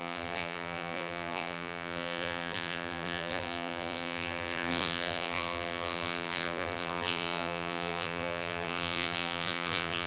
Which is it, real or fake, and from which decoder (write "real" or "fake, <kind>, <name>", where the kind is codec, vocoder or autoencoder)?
fake, vocoder, BigVGAN v2